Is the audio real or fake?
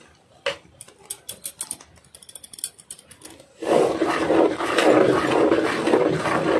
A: real